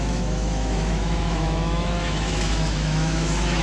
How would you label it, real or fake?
fake